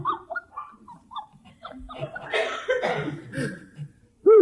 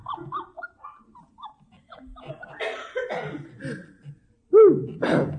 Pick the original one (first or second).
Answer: second